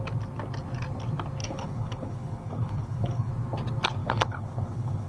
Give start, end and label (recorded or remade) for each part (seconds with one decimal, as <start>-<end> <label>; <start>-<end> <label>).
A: 0.0-1.4 recorded; 1.4-3.3 remade; 3.3-4.0 recorded; 4.0-5.1 remade